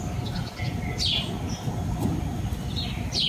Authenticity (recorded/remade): recorded